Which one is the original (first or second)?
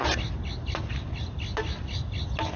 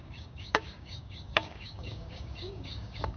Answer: first